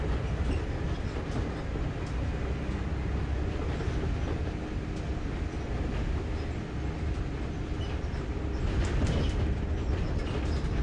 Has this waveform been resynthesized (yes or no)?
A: no